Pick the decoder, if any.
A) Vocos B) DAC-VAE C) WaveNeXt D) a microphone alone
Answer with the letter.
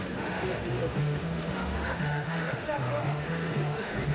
B